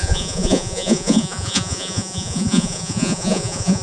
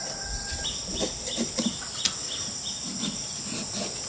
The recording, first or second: second